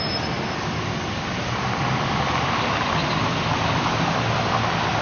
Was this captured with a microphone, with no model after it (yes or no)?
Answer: no